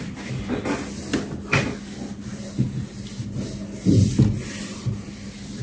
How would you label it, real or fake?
real